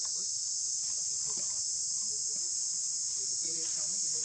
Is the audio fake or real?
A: real